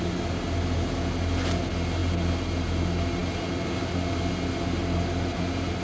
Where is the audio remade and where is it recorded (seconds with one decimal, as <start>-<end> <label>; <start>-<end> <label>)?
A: 0.0-5.8 recorded